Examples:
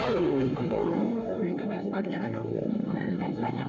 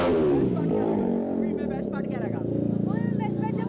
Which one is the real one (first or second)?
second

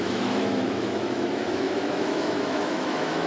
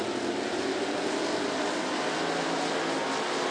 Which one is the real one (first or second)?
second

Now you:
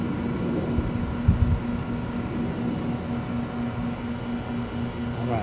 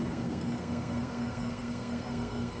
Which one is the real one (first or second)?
first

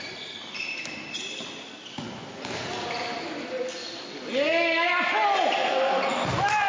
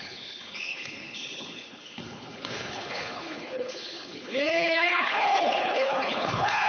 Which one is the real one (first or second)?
first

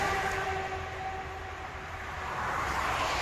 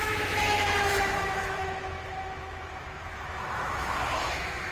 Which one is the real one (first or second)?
first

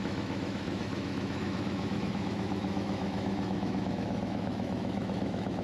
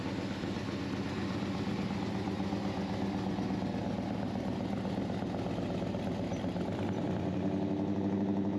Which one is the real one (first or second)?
second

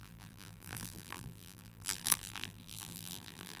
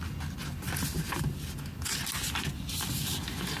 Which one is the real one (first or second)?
second